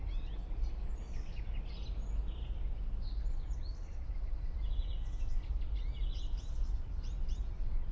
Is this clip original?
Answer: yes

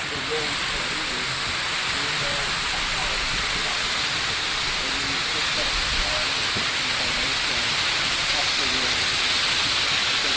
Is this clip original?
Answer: yes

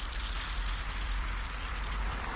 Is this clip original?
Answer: no